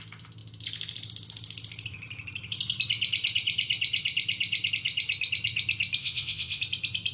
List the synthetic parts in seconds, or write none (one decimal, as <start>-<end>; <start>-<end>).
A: 6.0-6.6